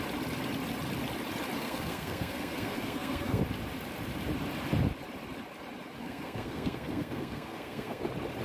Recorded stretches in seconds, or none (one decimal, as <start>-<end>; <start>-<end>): 0.0-1.6; 3.4-6.0; 8.0-8.4